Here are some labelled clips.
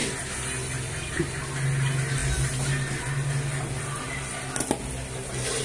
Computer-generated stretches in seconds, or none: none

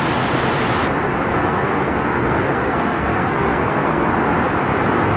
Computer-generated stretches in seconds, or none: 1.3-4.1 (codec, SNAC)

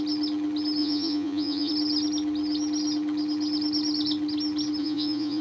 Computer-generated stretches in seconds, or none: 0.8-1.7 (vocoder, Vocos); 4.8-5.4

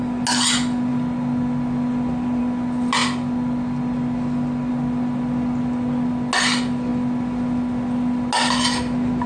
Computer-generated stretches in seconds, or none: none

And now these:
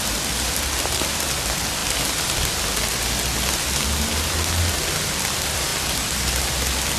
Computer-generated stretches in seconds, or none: none